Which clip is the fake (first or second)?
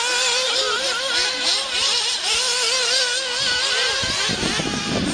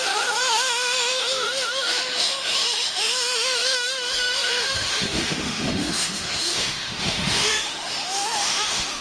second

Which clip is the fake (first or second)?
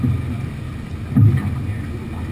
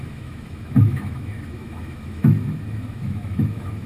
second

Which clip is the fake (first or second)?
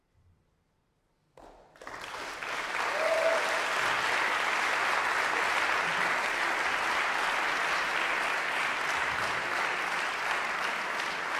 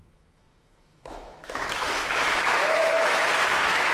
second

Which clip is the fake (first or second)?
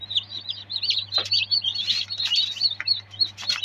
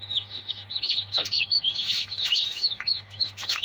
second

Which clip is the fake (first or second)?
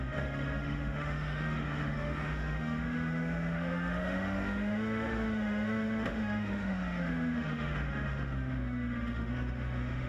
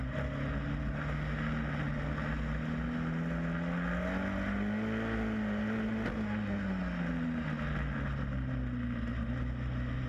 first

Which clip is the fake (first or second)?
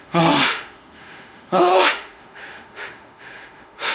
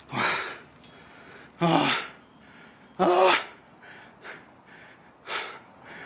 first